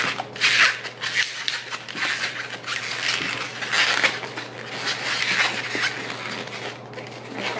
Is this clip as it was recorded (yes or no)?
yes